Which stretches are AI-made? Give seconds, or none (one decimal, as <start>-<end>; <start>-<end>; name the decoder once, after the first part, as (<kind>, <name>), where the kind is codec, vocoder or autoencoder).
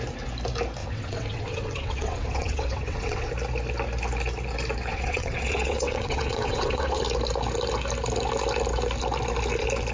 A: 0.8-3.3 (vocoder, WaveNeXt); 4.9-7.0